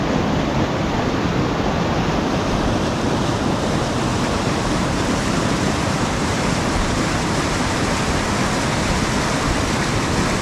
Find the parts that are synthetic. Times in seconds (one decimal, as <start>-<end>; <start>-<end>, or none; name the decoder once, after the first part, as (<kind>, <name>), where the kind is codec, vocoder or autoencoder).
4.1-7.4 (vocoder, BigVGAN v2)